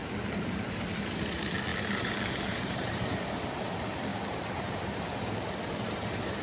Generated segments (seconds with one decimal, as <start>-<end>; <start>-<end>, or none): 0.0-1.0; 1.7-3.2; 4.1-6.4